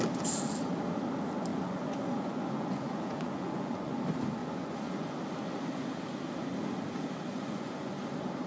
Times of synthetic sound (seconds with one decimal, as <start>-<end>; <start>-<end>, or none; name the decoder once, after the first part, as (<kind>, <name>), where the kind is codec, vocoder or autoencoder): 1.5-4.0 (vocoder, Vocos); 4.4-5.1; 7.3-8.0